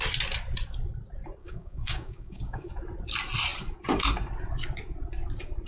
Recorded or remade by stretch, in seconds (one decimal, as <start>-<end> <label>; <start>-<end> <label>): 0.0-1.4 recorded; 1.4-2.7 remade; 2.7-5.7 recorded